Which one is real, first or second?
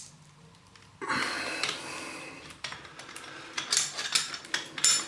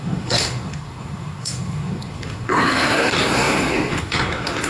first